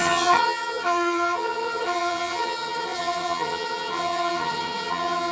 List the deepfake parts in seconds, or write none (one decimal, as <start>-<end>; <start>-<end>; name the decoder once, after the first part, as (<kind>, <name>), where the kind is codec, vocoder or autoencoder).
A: 0.0-5.3 (vocoder, HiFi-GAN)

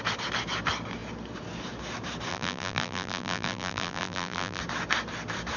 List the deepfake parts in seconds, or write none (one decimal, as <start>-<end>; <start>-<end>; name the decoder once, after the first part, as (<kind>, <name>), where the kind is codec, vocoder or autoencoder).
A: 2.3-4.6 (vocoder, BigVGAN v2)

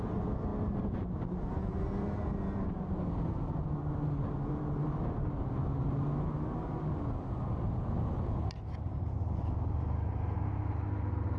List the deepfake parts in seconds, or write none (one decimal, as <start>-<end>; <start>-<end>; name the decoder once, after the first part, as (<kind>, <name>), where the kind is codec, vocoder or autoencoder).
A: none

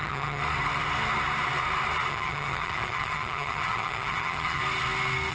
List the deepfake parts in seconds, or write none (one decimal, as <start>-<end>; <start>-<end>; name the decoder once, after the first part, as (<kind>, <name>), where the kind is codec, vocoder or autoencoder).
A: 0.0-0.4 (vocoder, HiFi-GAN); 2.1-4.6

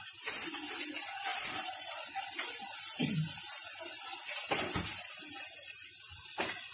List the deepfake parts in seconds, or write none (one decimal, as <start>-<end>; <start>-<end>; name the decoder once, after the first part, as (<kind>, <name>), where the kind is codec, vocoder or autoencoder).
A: 1.3-2.3 (vocoder, BigVGAN v2)